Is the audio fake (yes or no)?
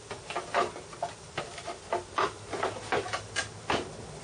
no